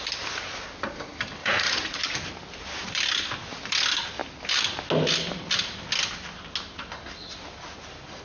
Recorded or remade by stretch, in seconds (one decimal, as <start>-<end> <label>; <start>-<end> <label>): 0.0-1.4 recorded; 1.4-2.0 remade; 2.0-8.2 recorded